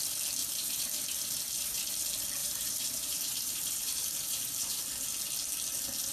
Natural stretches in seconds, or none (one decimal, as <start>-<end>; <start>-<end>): 0.0-0.4; 1.8-2.4; 4.8-6.1